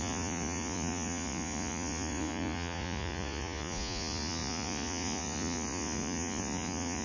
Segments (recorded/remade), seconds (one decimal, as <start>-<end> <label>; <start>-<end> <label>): 0.0-7.0 remade